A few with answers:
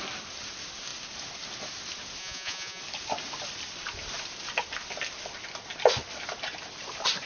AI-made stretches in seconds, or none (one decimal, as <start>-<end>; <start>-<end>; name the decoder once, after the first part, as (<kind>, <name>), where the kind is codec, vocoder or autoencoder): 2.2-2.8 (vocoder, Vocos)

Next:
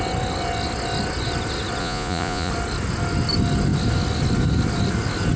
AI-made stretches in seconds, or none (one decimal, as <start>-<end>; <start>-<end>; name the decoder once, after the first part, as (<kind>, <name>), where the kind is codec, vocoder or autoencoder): 1.8-2.5 (vocoder, Vocos)

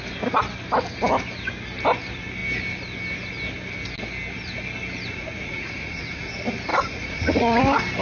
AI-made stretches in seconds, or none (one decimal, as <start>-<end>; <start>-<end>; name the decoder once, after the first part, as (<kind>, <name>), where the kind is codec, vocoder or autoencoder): 5.1-6.3 (vocoder, Vocos); 6.7-7.6

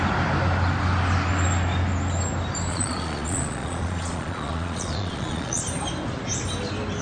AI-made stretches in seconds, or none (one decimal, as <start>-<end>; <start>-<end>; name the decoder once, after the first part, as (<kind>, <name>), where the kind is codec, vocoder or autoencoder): 2.7-5.6 (vocoder, Vocos)